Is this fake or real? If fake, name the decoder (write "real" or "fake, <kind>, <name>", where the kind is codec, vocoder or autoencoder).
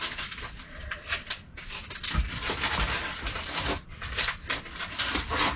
real